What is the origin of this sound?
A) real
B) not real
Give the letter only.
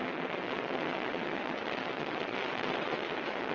B